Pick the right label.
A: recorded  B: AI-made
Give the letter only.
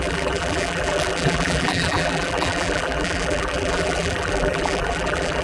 B